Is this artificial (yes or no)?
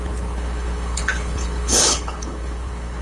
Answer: yes